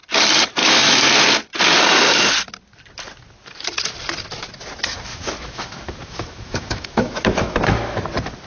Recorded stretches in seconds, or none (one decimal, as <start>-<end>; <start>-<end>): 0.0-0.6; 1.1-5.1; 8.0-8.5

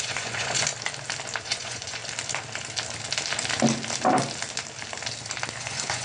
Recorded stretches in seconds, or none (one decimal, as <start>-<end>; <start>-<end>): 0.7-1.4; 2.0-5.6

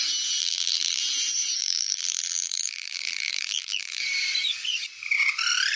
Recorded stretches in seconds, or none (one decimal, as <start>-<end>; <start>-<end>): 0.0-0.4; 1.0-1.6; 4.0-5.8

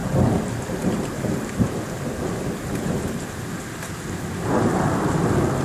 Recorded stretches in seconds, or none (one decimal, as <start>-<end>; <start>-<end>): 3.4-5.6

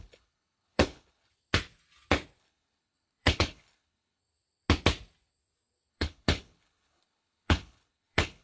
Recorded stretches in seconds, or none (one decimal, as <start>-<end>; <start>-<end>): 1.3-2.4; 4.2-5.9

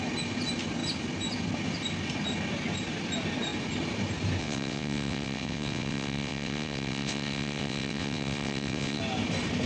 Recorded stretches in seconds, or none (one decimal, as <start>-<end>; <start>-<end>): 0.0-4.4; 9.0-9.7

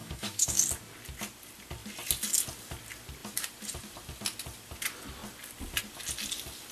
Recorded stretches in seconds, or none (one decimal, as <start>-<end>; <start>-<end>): 0.6-6.7

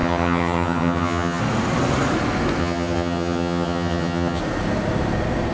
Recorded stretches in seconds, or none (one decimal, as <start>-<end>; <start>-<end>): 1.4-2.6; 4.4-5.5